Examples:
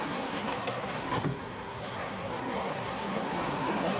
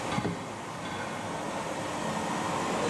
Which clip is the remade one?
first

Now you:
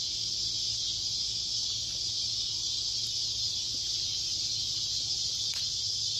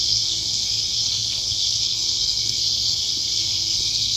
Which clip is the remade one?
second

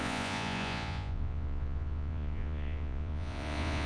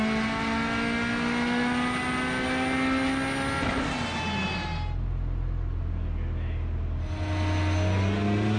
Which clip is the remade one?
first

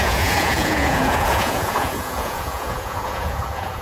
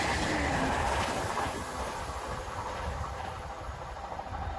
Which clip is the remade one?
first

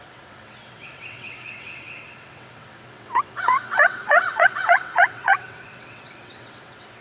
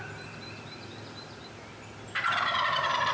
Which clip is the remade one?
first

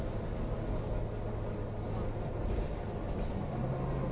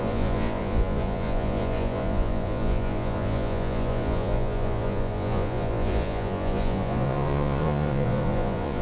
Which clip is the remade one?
second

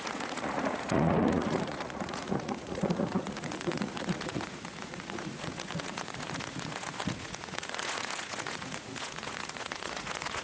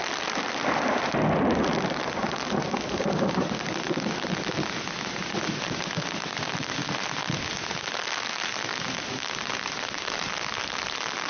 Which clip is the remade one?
first